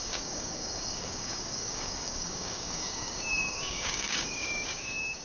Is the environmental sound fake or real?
fake